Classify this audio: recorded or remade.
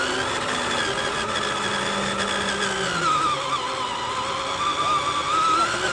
recorded